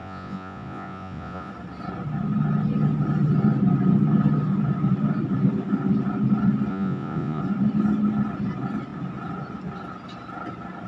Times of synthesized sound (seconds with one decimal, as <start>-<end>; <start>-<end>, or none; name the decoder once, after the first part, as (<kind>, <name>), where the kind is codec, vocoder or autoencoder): 0.0-1.5 (vocoder, Vocos); 6.7-7.4

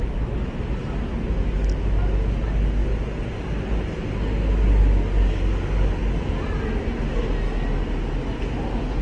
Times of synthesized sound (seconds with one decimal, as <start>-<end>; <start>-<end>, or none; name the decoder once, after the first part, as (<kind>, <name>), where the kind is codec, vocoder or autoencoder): none